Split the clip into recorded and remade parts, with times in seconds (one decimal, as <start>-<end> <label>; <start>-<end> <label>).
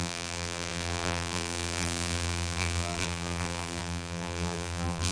0.0-5.1 remade